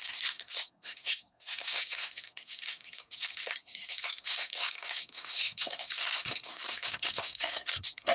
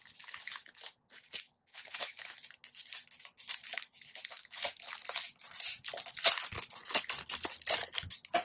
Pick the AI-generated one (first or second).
first